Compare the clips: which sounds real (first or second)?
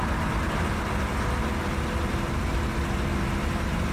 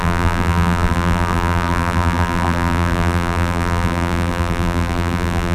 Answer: first